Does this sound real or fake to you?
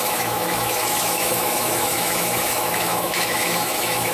fake